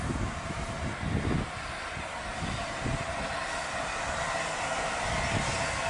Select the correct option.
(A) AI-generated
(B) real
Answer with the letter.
B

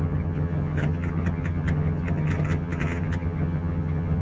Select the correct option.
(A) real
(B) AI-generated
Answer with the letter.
B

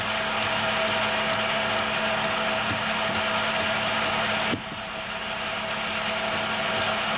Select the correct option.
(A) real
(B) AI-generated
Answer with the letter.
A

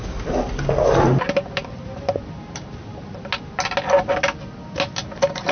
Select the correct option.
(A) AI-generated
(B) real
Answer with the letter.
B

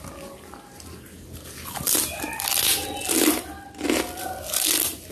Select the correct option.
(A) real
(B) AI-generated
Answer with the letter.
A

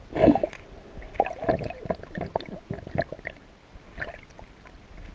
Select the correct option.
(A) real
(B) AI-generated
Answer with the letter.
A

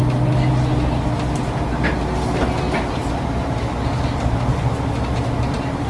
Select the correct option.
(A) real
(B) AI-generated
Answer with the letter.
A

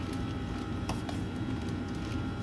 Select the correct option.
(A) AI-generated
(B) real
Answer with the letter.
B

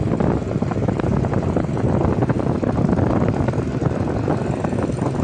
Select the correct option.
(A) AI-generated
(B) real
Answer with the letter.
B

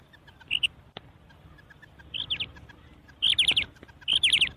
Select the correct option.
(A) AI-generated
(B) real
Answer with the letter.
B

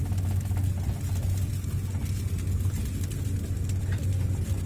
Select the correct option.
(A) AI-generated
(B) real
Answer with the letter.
B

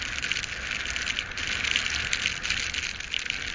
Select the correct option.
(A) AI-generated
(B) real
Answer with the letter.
B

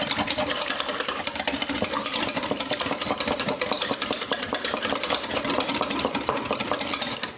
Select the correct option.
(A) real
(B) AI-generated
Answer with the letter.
A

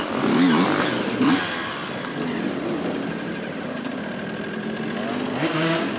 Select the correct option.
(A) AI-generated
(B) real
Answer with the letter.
B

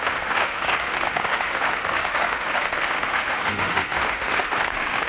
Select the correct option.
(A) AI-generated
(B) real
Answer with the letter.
A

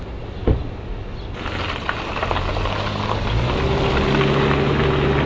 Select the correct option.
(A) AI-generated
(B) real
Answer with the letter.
B